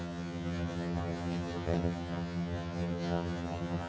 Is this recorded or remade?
remade